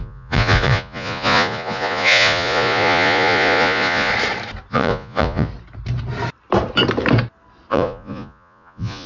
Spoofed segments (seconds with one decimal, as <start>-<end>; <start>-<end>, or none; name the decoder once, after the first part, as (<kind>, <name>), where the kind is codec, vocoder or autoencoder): 0.0-4.1 (vocoder, Vocos); 4.7-5.5; 7.7-9.1